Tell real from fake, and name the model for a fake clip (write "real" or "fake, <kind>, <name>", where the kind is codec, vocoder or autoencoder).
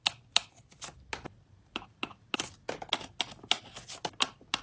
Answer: real